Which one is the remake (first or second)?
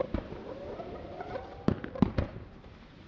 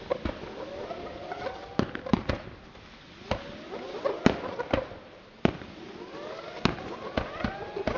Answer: first